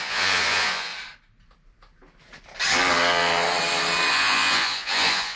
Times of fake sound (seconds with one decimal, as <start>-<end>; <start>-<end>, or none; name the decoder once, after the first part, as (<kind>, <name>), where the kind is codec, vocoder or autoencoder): 0.0-0.9 (vocoder, Vocos); 4.1-5.4